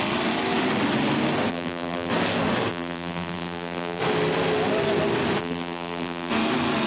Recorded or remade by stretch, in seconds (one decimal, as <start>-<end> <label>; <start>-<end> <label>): 0.0-1.5 recorded; 1.5-2.1 remade; 2.1-2.7 recorded; 2.7-4.0 remade; 4.0-5.4 recorded; 5.4-6.3 remade; 6.3-6.9 recorded